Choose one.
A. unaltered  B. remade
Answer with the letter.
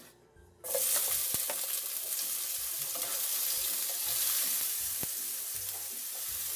A